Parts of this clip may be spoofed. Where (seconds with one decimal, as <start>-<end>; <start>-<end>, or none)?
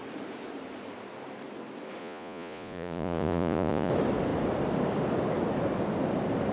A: 2.0-3.9